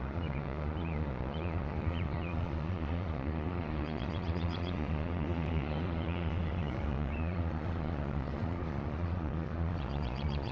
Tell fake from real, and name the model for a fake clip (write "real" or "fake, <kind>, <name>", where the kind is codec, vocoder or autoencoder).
fake, vocoder, Vocos